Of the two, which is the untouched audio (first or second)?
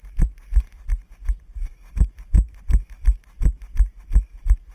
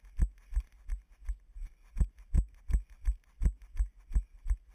second